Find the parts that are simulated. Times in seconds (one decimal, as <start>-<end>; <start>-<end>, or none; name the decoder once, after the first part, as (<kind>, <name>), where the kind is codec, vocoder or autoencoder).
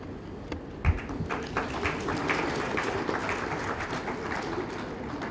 none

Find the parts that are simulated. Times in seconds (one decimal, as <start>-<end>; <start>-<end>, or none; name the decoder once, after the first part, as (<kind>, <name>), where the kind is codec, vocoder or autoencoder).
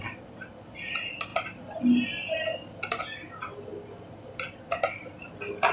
none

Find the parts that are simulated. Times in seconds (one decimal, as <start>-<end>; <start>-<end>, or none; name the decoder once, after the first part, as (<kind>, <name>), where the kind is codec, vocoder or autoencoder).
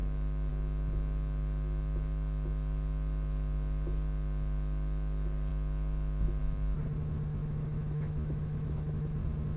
7.4-9.1 (autoencoder, DAC-VAE)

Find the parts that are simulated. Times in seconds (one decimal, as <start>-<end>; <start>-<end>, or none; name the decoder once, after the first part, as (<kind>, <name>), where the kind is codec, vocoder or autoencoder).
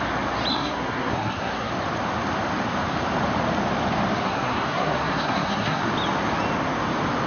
0.5-1.7 (codec, SNAC); 4.2-5.9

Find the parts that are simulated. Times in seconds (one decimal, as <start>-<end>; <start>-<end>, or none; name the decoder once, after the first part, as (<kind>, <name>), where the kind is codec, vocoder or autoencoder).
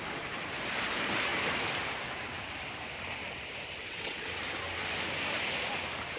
3.8-4.4 (vocoder, WaveNeXt)